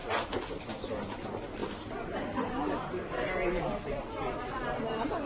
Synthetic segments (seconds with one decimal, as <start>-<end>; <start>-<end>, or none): 0.7-5.3